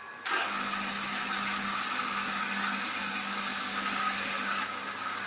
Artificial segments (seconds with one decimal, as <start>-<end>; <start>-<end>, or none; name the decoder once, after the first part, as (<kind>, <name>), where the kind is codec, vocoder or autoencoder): 2.0-5.3 (codec, DAC)